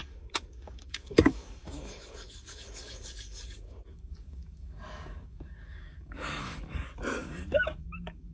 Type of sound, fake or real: fake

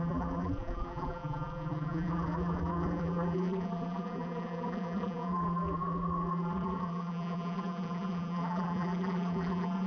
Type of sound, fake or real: fake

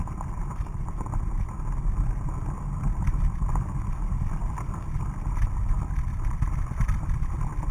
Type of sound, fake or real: real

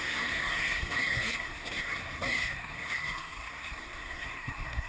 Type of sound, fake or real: fake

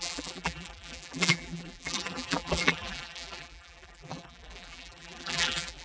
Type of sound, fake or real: fake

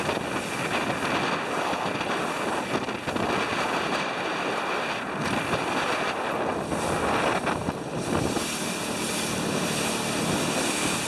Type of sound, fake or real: real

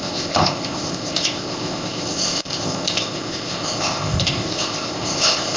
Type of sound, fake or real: fake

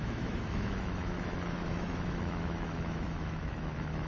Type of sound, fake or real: fake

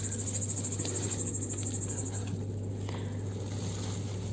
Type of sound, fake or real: real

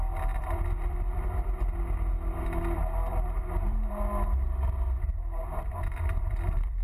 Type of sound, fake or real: fake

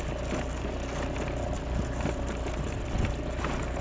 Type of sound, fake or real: real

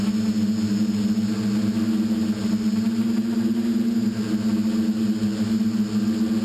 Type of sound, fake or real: real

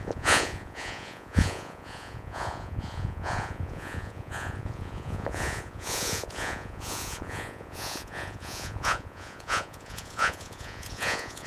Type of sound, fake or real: fake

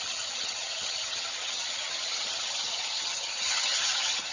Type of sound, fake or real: fake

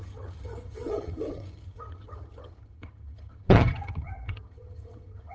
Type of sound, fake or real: fake